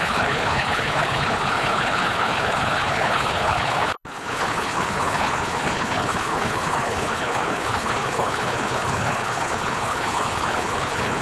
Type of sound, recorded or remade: remade